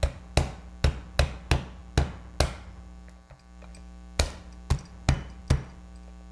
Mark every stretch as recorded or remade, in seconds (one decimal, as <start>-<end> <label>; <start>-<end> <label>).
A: 0.0-6.3 recorded